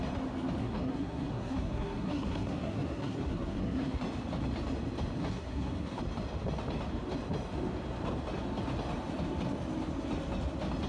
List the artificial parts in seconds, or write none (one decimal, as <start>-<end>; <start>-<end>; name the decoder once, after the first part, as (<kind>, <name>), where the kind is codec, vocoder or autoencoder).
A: 0.6-4.0 (codec, SNAC); 5.2-6.0